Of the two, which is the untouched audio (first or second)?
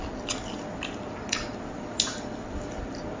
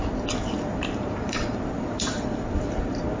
first